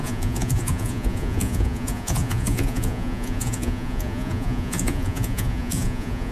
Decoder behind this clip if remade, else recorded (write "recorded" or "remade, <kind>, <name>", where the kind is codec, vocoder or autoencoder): remade, vocoder, Vocos